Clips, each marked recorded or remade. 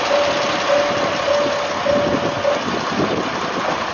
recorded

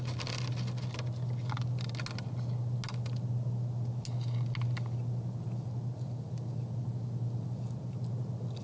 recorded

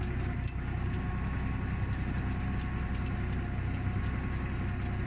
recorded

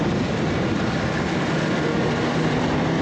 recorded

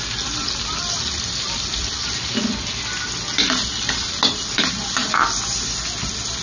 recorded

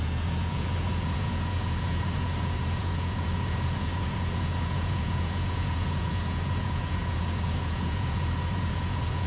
remade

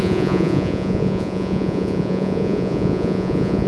remade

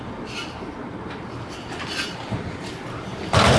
recorded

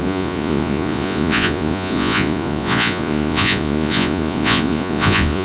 remade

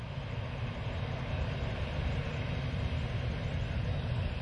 recorded